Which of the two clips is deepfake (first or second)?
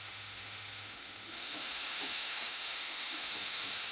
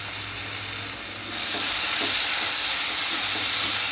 first